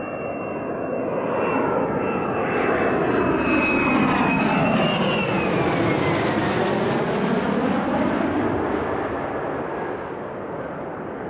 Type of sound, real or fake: real